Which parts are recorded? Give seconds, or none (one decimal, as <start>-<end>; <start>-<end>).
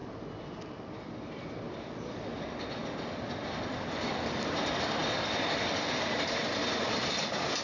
0.0-7.6